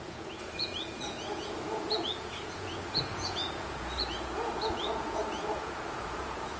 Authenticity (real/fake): fake